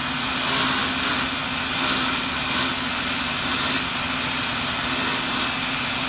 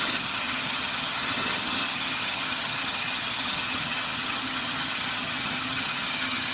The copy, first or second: second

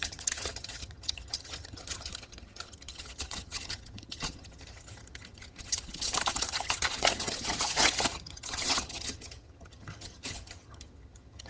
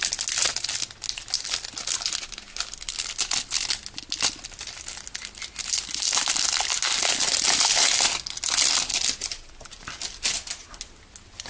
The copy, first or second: first